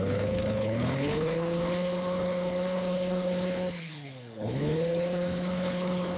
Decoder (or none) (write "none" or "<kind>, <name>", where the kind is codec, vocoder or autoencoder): codec, HILCodec